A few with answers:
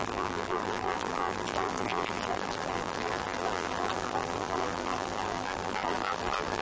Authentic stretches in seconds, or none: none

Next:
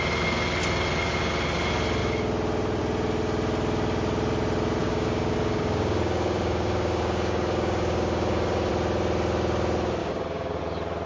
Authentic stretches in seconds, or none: 0.0-4.8; 8.7-10.0; 10.6-11.1

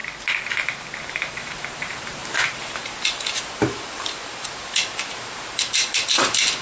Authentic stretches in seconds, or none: 0.0-1.0

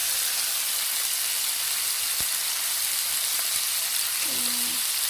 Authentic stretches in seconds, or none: 0.0-5.1

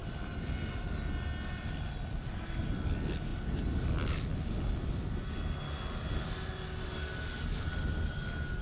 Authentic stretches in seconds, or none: 0.0-8.6

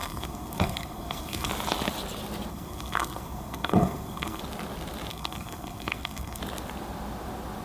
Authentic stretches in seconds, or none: 1.5-2.5; 4.4-5.1; 6.4-7.6

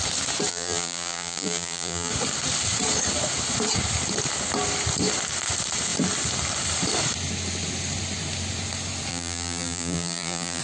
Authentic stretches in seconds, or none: 0.0-0.5; 2.1-9.1